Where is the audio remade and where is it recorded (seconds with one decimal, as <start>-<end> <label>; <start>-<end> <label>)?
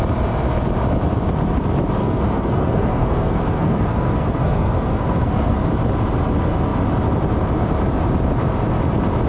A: 0.0-2.0 recorded; 2.0-5.7 remade; 5.7-9.3 recorded